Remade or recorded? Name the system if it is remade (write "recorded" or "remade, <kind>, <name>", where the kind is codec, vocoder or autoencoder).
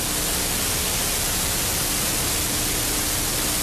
recorded